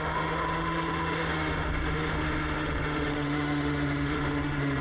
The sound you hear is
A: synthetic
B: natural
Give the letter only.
A